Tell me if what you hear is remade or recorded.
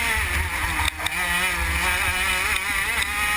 recorded